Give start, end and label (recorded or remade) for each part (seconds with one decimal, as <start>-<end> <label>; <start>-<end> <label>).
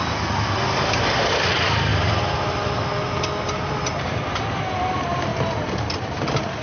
0.0-6.6 recorded